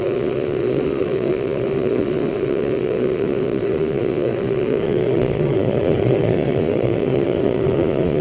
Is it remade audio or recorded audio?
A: remade